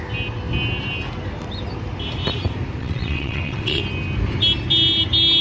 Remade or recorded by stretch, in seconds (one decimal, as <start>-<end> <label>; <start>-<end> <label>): 0.0-2.8 recorded; 2.8-3.8 remade; 3.8-5.4 recorded